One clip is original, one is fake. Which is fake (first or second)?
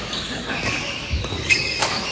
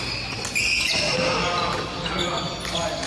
first